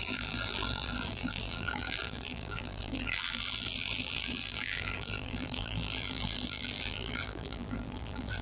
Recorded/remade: remade